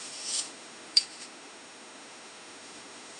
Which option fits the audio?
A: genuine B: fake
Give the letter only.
B